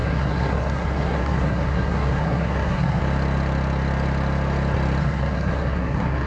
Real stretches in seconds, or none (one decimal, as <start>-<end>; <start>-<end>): 3.0-5.0